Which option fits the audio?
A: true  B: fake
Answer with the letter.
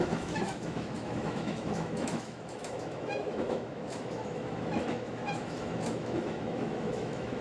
B